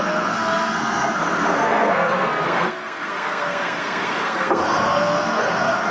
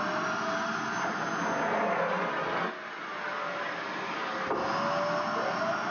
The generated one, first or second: first